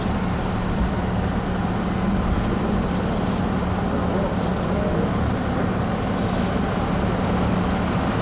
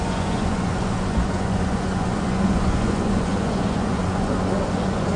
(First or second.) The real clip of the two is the first